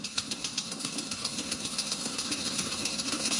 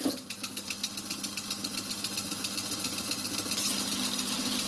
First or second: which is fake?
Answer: first